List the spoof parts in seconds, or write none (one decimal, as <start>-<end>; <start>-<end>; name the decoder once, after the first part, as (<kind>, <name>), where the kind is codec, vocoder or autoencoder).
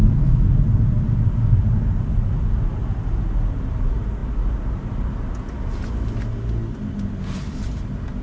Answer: none